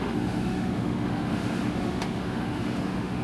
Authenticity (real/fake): fake